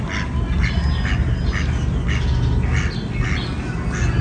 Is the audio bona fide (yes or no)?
yes